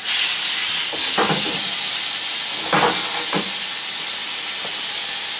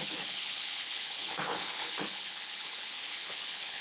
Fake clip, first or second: second